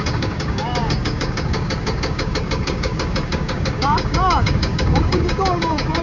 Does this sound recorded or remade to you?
remade